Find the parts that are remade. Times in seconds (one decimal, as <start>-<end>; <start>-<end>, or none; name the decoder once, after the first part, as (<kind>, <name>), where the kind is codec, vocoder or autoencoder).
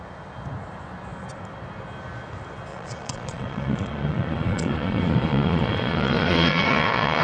2.7-7.2 (vocoder, Vocos)